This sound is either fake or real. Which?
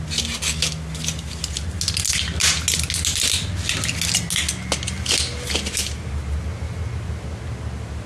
real